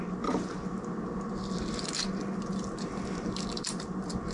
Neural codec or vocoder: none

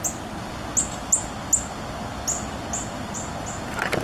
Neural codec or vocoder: none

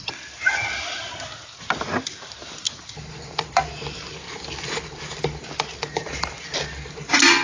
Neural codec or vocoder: none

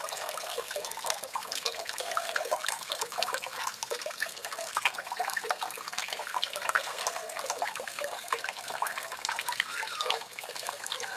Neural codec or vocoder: codec, SNAC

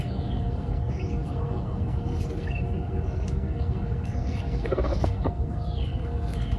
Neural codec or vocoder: codec, SNAC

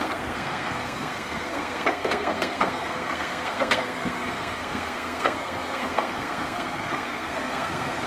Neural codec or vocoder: codec, SNAC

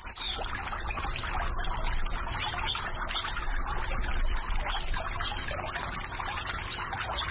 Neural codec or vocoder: none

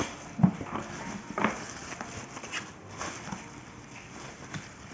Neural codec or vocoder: none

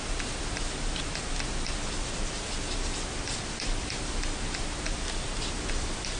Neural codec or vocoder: none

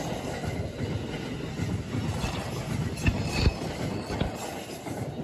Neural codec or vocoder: none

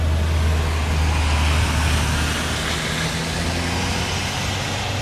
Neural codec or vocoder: none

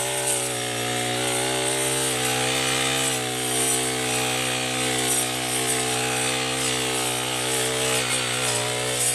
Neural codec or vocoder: none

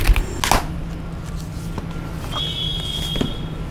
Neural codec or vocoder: none